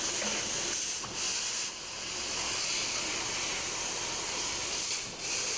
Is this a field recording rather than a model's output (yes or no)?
yes